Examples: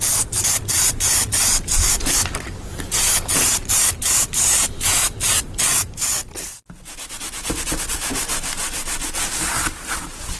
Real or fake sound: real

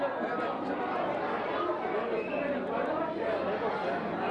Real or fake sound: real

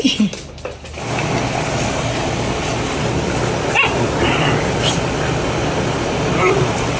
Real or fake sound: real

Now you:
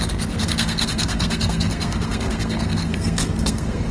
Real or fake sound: fake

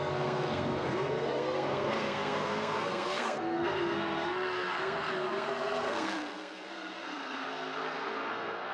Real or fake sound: fake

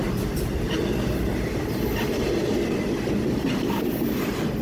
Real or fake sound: real